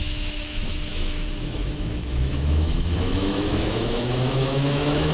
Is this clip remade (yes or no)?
yes